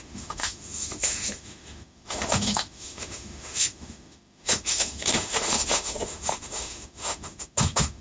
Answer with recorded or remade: remade